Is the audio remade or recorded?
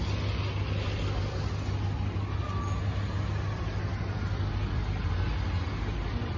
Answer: recorded